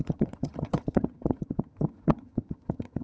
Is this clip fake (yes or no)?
yes